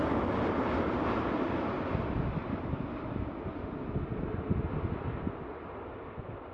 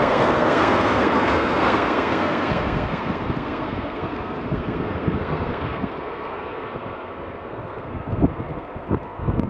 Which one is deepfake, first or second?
second